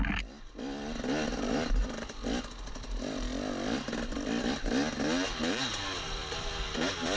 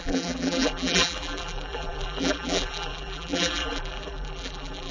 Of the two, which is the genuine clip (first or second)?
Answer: first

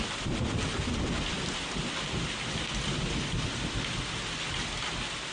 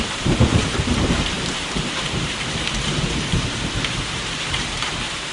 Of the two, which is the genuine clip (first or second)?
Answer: first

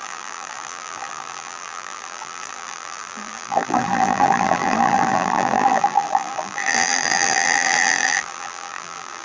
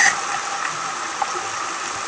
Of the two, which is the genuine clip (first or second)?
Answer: second